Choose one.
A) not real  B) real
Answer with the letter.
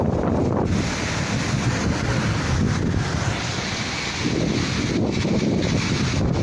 B